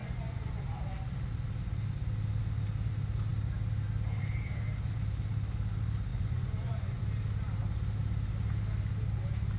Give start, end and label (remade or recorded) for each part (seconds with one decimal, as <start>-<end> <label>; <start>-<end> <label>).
0.0-0.6 remade; 0.6-6.1 recorded; 6.1-7.0 remade; 7.0-9.6 recorded